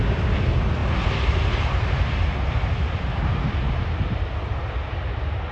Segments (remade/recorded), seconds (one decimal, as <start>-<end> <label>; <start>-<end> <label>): 0.0-5.5 recorded